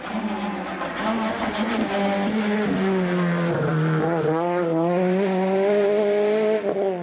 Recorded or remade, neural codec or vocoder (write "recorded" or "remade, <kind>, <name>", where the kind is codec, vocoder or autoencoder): recorded